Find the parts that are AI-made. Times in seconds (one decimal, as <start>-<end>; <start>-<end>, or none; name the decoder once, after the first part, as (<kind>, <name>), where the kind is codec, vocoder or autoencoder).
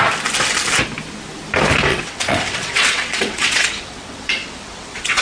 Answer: 1.9-5.2 (vocoder, WaveNeXt)